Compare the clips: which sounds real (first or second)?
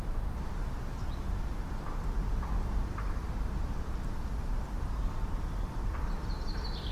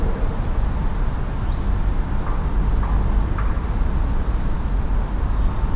second